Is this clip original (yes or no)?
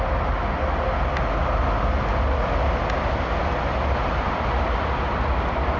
yes